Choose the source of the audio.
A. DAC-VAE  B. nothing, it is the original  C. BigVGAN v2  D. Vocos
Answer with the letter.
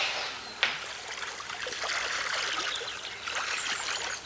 B